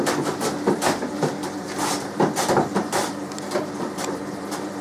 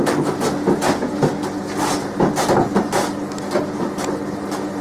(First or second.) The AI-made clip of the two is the first